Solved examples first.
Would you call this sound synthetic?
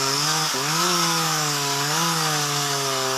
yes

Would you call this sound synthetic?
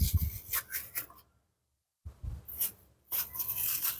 no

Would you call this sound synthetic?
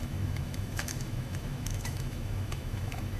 yes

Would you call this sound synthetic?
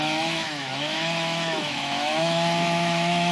yes